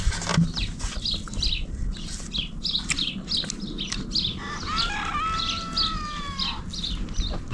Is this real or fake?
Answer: real